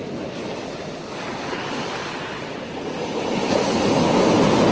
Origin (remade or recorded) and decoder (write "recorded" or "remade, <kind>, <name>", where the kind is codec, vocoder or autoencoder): recorded